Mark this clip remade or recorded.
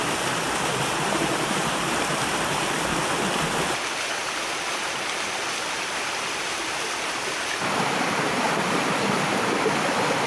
recorded